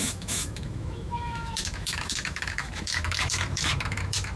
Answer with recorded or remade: remade